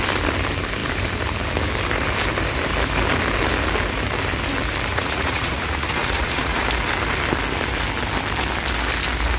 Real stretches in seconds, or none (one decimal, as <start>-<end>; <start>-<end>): 0.0-4.9; 6.6-9.4